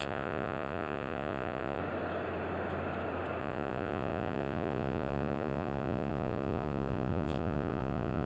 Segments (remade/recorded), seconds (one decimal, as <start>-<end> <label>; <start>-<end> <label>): 0.0-1.8 remade; 1.8-3.4 recorded; 3.4-8.3 remade